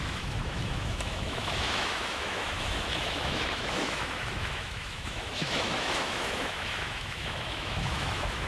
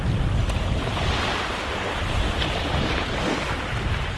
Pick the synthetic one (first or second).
first